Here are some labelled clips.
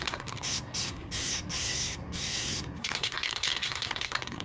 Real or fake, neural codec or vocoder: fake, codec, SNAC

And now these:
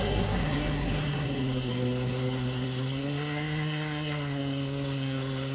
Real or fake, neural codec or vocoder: fake, codec, SNAC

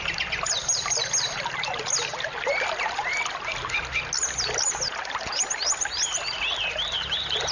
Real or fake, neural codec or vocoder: real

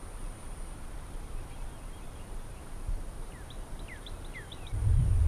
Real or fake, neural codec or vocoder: fake, vocoder, BigVGAN v2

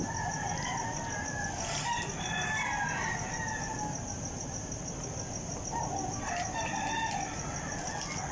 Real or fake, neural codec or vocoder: real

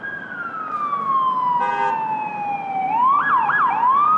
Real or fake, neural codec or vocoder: real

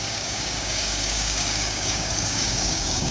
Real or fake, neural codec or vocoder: fake, codec, DAC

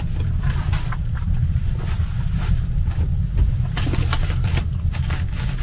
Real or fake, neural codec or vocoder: fake, vocoder, BigVGAN v2